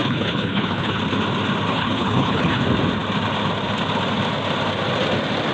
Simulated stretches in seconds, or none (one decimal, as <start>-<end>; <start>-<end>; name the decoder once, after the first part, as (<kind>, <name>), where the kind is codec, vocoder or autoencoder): 0.0-1.0 (codec, HILCodec); 1.7-2.6